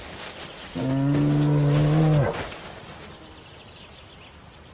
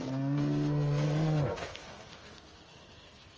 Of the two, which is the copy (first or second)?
second